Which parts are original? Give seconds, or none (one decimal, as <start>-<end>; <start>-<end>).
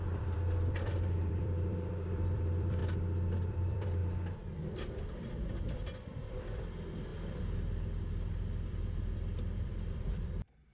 2.8-3.5; 4.0-5.4